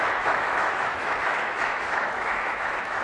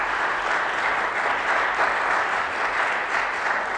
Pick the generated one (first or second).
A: first